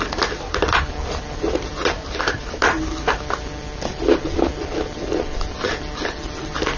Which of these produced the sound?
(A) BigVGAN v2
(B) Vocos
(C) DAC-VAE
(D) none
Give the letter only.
D